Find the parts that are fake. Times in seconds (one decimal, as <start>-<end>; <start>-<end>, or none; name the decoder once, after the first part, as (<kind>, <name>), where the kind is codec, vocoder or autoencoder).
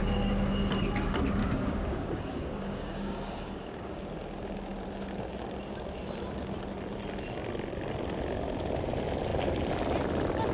1.4-4.0 (codec, DAC)